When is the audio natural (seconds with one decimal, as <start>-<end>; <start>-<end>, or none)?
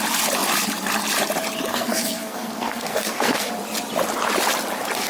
0.0-1.7; 3.5-5.1